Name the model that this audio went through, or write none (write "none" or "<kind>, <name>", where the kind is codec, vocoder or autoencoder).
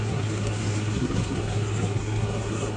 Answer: codec, SNAC